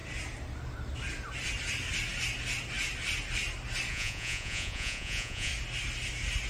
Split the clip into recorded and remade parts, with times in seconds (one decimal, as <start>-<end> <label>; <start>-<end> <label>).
0.0-3.9 recorded; 3.9-5.5 remade; 5.5-6.5 recorded